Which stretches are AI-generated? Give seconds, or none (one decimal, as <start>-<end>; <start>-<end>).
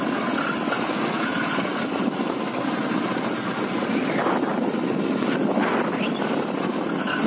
none